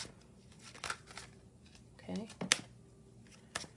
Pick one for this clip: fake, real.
real